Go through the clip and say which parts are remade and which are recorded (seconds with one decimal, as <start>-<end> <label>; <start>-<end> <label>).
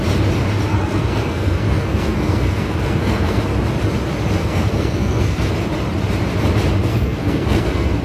0.0-0.7 recorded; 0.7-3.4 remade; 3.4-4.4 recorded; 4.4-5.5 remade; 5.5-6.8 recorded; 6.8-8.0 remade